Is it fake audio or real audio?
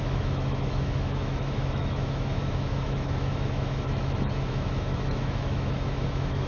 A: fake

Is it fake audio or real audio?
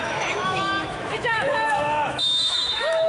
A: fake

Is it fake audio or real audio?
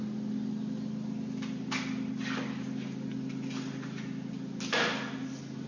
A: real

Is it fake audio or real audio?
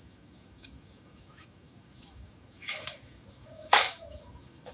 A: fake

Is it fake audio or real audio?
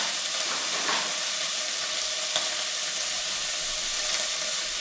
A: real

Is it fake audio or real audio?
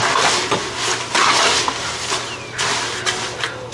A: real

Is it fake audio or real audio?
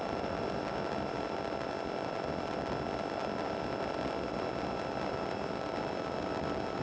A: real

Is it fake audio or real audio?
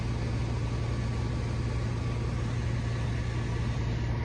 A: real